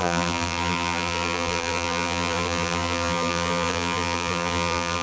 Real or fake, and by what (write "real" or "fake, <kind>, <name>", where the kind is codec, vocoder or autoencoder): fake, vocoder, BigVGAN v2